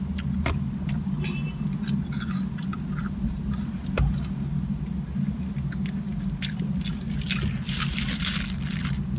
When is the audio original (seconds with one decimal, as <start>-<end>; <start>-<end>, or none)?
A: 0.0-9.2